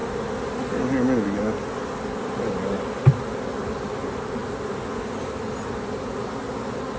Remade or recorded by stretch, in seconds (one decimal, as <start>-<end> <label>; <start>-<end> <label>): 0.0-7.0 recorded